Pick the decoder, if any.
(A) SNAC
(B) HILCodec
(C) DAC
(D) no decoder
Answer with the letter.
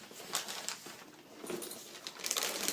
D